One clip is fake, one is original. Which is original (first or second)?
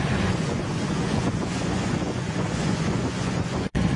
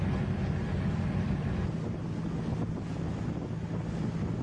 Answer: second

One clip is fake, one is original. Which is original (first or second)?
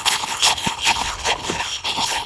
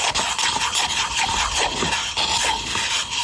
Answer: second